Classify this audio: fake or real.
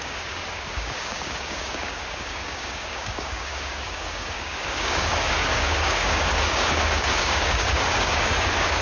fake